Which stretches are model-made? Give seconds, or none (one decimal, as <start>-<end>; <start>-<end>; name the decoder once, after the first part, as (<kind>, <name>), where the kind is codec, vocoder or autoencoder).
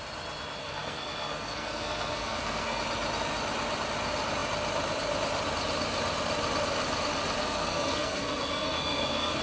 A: 0.6-2.8 (codec, SNAC); 7.4-9.4